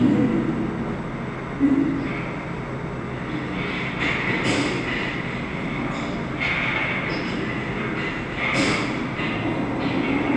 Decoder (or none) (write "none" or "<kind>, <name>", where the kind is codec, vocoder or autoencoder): none